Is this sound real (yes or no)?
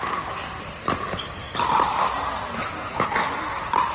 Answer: yes